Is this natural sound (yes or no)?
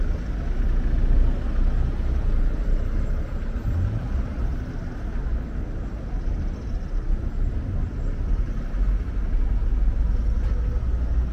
yes